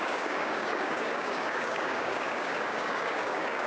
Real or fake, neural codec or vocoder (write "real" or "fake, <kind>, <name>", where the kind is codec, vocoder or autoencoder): fake, codec, DAC